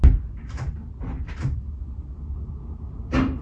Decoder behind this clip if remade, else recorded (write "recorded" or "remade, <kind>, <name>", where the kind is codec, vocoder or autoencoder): recorded